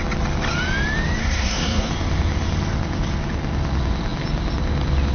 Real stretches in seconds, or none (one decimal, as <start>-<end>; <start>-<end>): 0.0-1.2; 1.9-5.1